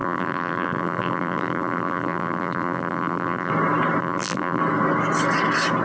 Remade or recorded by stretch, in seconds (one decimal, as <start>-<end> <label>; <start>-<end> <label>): 0.0-3.5 remade; 3.5-4.0 recorded; 4.0-4.6 remade; 4.6-5.8 recorded